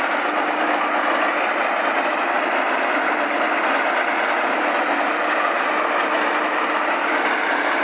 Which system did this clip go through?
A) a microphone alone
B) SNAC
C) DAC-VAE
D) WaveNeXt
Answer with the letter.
A